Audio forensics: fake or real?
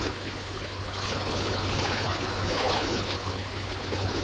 fake